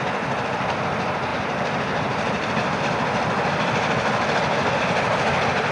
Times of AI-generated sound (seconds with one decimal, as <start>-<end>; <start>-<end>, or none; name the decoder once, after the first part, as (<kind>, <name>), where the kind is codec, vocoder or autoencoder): 1.3-2.8 (vocoder, BigVGAN v2)